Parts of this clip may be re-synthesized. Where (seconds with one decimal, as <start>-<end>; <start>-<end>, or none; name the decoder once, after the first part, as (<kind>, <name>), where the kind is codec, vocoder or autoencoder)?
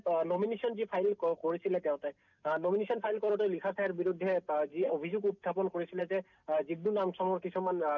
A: 2.2-3.4 (codec, DAC)